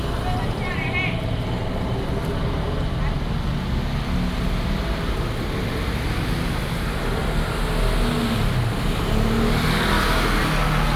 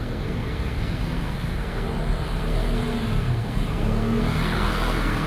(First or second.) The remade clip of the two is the second